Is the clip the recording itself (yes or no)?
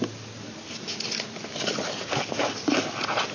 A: yes